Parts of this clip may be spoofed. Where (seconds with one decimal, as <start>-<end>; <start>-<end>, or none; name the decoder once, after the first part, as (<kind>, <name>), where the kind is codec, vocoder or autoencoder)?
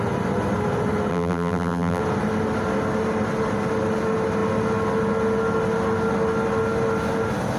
1.1-2.0 (vocoder, BigVGAN v2)